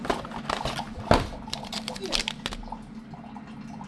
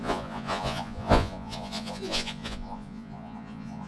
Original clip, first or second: first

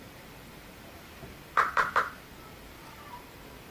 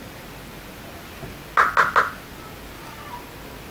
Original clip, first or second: second